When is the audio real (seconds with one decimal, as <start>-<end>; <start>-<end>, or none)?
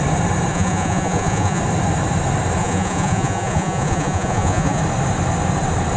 0.0-0.5; 1.6-2.6; 4.8-6.0